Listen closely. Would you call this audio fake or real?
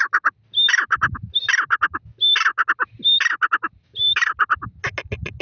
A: real